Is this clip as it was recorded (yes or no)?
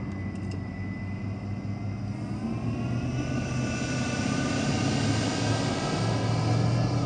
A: yes